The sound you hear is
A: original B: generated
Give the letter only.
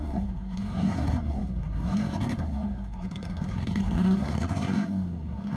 B